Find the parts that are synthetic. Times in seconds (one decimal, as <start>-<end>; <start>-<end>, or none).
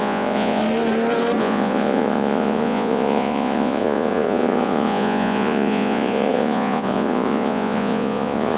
0.0-0.6; 1.4-8.6